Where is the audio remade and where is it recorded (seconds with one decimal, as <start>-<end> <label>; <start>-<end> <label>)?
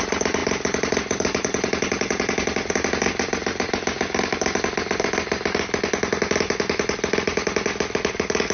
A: 0.0-8.5 recorded